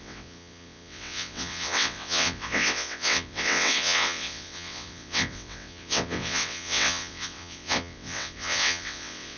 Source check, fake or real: fake